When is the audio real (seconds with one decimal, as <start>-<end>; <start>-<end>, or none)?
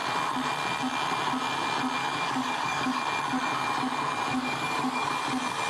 0.0-2.0; 3.0-4.3; 5.1-5.7